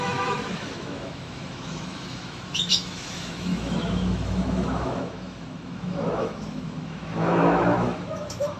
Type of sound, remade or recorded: remade